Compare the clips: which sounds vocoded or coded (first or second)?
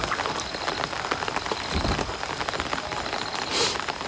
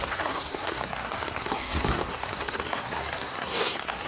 second